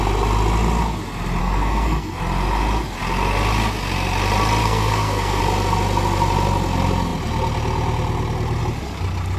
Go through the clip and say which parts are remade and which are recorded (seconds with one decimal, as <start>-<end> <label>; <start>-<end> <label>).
0.0-1.4 recorded; 1.4-2.2 remade; 2.2-4.6 recorded; 4.6-5.4 remade; 5.4-9.4 recorded